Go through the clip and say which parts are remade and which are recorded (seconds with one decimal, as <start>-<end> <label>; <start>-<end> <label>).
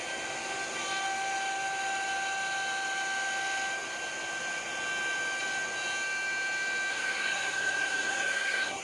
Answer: 0.0-6.9 recorded; 6.9-8.8 remade